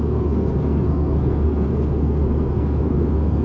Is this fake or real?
fake